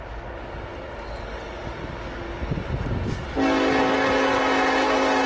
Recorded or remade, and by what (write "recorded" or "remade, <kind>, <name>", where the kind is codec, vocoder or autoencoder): recorded